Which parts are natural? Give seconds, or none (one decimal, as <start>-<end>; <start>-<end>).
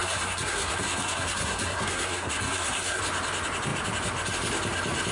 3.0-5.1